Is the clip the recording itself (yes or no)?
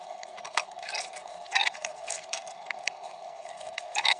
no